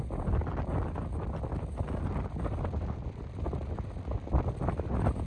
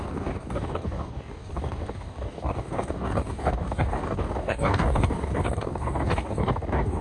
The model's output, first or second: second